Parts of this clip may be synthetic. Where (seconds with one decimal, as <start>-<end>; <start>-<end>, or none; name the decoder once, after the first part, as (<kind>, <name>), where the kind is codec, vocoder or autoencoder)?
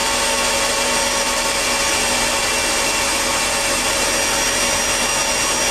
none